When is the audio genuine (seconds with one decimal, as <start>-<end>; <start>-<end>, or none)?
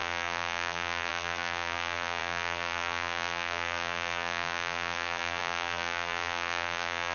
none